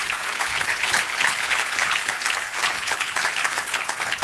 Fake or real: fake